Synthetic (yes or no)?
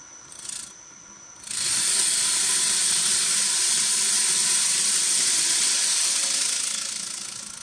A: no